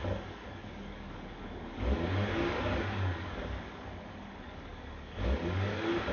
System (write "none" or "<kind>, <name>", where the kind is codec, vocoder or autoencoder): codec, DAC